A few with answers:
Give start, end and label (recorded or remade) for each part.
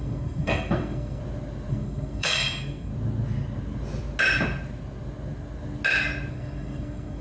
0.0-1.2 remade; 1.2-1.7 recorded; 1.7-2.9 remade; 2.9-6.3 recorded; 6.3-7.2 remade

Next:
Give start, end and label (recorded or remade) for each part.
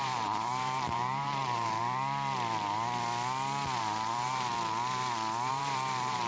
0.0-1.8 remade; 1.8-3.8 recorded; 3.8-4.5 remade; 4.5-5.5 recorded; 5.5-6.3 remade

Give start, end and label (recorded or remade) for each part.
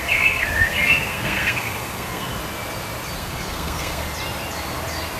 0.0-2.3 remade; 2.3-3.2 recorded; 3.2-4.0 remade; 4.0-5.2 recorded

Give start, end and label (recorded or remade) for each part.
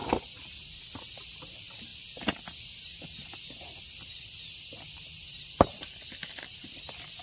0.0-1.5 recorded; 1.5-1.9 remade; 1.9-3.8 recorded; 3.8-7.2 remade